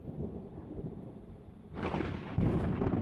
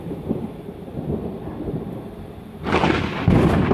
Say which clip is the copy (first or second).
first